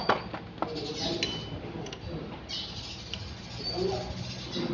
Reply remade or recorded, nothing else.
recorded